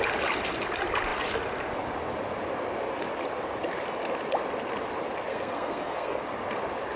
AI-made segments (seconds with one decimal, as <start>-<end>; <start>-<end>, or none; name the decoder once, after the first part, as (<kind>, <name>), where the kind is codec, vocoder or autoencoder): 5.3-6.2 (codec, SNAC)